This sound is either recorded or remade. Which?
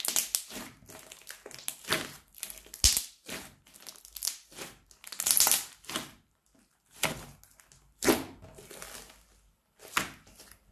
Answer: recorded